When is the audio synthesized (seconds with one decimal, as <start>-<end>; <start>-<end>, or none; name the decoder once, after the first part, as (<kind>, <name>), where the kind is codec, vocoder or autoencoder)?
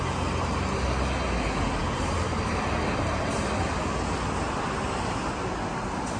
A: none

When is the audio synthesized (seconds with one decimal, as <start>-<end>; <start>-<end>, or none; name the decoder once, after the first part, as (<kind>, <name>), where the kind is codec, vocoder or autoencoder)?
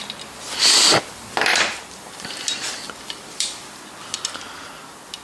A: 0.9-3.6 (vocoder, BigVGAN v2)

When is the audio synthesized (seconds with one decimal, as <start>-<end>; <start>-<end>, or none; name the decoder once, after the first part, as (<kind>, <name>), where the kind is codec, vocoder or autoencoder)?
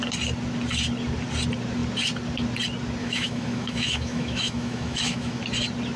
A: 3.0-5.4 (autoencoder, DAC-VAE)